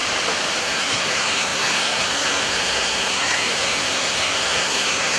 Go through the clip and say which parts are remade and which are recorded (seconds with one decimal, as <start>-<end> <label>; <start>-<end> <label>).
0.0-0.6 recorded; 0.6-5.2 remade